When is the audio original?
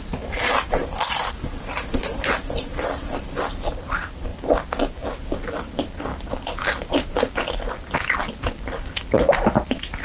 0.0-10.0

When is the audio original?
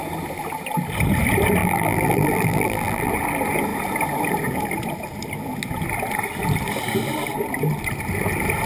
0.0-1.6; 3.1-8.7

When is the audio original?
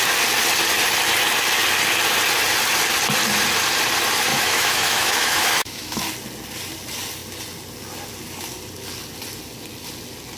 0.0-4.3; 6.0-10.4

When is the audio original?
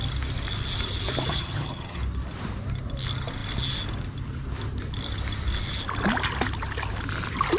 0.0-1.3; 2.0-7.6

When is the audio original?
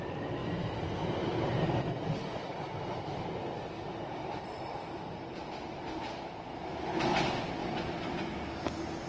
0.0-0.4; 4.8-9.1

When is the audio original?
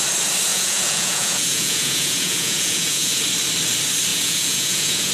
0.0-0.5; 3.2-4.1